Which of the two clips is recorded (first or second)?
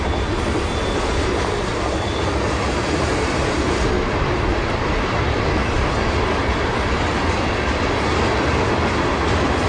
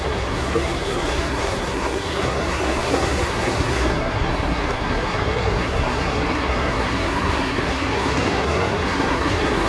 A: first